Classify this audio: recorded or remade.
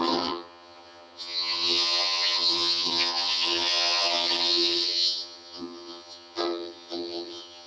remade